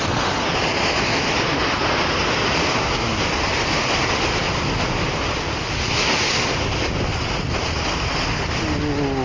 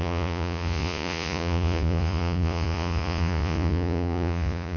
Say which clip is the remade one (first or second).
second